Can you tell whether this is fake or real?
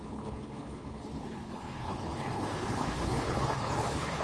fake